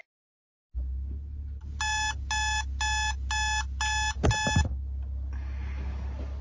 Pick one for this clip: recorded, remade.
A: recorded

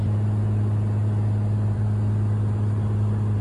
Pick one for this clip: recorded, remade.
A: remade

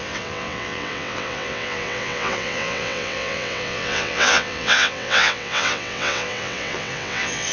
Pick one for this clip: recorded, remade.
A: remade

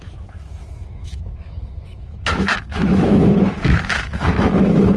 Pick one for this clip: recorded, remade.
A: remade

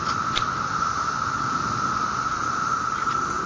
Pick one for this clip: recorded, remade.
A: remade